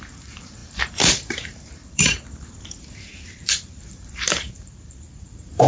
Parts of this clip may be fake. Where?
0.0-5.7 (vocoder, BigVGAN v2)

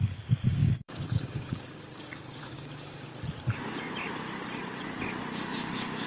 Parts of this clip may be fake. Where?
0.0-3.1 (codec, DAC); 5.3-6.1

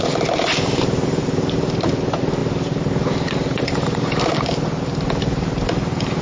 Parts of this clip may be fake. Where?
0.0-6.2 (vocoder, BigVGAN v2)

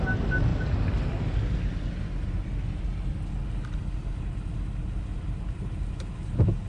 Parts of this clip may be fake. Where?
none

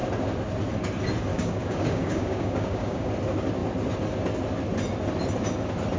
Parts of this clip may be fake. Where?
1.3-3.1 (codec, DAC)

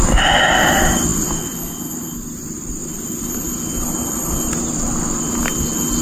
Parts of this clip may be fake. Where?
none